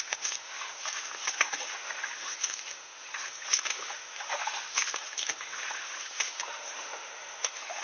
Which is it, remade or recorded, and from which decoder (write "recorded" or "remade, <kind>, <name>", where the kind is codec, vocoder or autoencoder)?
remade, autoencoder, DAC-VAE